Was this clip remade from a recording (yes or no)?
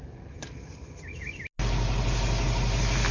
no